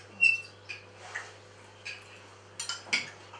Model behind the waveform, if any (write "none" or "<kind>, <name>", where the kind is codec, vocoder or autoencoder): none